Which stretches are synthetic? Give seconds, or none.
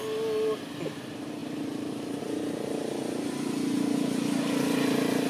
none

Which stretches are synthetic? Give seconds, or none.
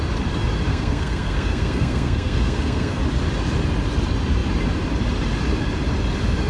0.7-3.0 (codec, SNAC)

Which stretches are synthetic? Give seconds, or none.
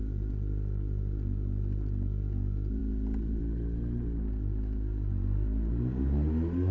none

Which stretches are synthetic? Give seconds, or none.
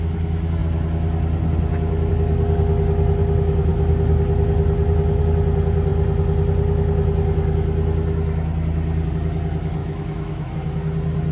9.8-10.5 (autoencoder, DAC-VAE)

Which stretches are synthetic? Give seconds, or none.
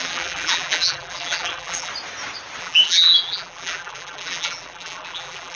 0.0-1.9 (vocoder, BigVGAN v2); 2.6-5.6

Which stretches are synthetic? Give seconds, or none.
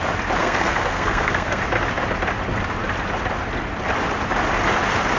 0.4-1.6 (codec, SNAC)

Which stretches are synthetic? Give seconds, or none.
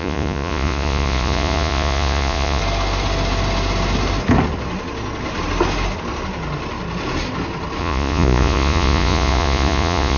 0.0-2.6 (vocoder, Vocos); 7.8-10.2